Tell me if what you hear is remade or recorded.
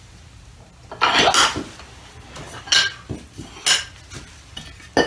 recorded